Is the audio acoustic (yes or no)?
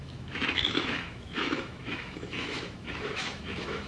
no